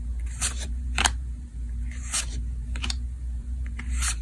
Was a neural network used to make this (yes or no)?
yes